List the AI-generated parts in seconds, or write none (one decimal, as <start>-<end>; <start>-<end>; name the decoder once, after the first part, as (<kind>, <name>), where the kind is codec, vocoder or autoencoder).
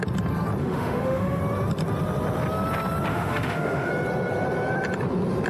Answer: 0.6-1.4 (autoencoder, DAC-VAE); 3.1-3.9